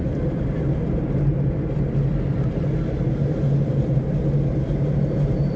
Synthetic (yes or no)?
no